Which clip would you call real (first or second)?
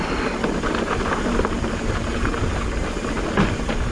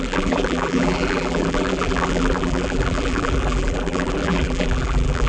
first